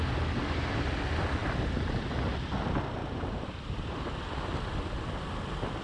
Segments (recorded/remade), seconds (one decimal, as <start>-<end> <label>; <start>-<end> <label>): 0.0-3.0 recorded; 3.0-4.2 remade; 4.2-5.8 recorded

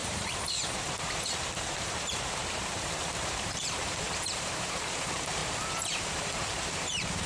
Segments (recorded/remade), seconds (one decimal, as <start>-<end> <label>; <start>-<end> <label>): 0.0-5.4 remade; 5.4-6.0 recorded; 6.0-7.3 remade

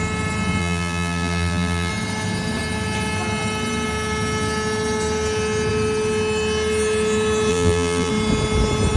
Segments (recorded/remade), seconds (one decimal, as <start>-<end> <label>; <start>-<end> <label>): 0.0-0.6 recorded; 0.6-1.9 remade; 1.9-7.5 recorded; 7.5-8.1 remade; 8.1-9.0 recorded

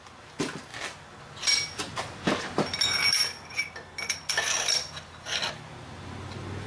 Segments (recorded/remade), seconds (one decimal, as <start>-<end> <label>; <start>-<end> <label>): 0.0-6.7 recorded

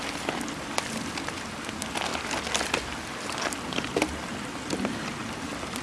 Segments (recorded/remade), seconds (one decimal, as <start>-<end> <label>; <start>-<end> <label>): 0.0-5.8 recorded

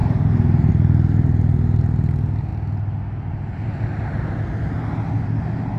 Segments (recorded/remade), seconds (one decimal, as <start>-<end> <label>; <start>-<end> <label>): 0.0-0.7 remade; 0.7-5.8 recorded

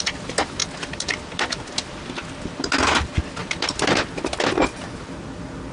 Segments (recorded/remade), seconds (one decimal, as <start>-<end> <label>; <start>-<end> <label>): 0.0-0.6 recorded; 0.6-1.5 remade; 1.5-3.4 recorded; 3.4-4.0 remade; 4.0-5.7 recorded